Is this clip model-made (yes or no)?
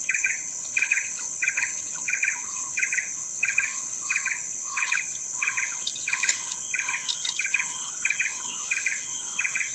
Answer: yes